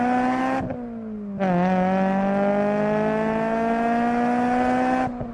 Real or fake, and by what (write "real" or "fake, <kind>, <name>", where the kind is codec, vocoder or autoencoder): real